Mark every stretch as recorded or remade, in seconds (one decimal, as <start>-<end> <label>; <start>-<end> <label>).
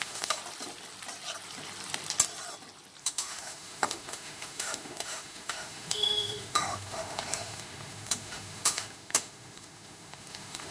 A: 0.0-0.4 remade; 0.4-3.0 recorded; 3.0-10.7 remade